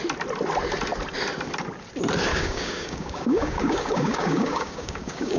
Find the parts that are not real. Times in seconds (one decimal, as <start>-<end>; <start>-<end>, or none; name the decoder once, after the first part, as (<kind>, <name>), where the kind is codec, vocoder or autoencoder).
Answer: 2.3-5.4 (codec, DAC)